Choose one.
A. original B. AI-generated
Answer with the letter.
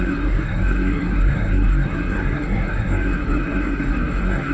B